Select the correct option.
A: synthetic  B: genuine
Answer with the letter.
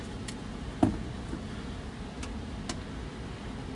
B